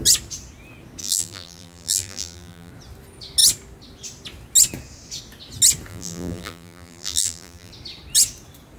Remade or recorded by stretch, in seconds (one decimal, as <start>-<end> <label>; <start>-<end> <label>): 0.0-1.0 recorded; 1.0-2.7 remade; 2.7-5.9 recorded; 5.9-7.7 remade; 7.7-8.8 recorded